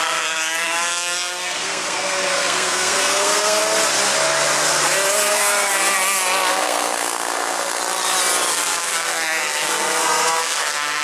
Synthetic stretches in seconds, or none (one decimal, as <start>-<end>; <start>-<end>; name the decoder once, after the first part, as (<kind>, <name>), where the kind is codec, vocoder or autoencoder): 0.0-3.6 (codec, SNAC); 5.3-5.7; 6.5-7.8; 8.5-11.0

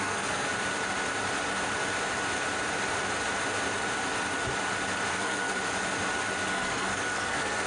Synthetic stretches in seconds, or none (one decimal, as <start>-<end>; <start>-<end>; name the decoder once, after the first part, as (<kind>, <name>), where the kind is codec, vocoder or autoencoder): 0.0-0.5 (codec, SNAC); 5.1-5.6; 6.5-7.7

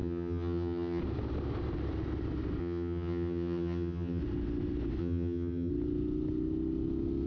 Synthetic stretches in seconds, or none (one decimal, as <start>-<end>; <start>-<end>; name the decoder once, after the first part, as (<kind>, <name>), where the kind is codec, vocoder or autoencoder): 0.0-1.0 (vocoder, HiFi-GAN); 2.6-4.2; 5.0-5.7

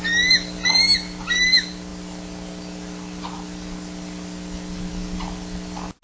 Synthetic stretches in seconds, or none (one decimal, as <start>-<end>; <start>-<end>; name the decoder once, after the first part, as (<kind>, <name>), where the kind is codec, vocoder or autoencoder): none

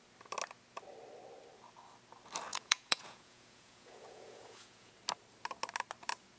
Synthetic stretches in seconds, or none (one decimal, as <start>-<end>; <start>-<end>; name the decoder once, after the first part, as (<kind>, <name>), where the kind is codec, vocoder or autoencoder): 2.5-4.9 (vocoder, Vocos)

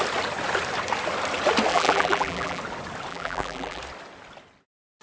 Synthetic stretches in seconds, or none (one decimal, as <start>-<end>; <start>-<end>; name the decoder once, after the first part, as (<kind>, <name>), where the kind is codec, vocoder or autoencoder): 1.7-2.6 (vocoder, BigVGAN v2); 3.1-3.8